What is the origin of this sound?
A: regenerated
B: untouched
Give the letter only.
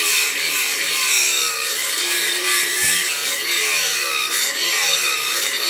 A